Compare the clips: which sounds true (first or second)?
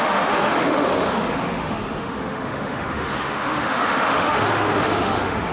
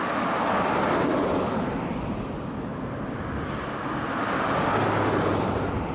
second